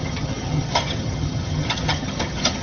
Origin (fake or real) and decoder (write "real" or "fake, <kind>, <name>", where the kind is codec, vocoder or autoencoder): fake, vocoder, HiFi-GAN